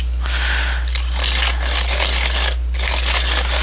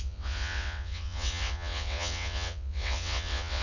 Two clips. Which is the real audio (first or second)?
first